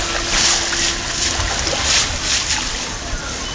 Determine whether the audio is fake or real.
real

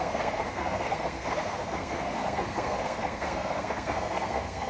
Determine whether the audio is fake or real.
fake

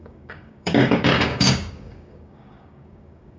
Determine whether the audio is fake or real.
fake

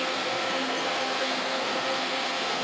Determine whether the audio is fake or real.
fake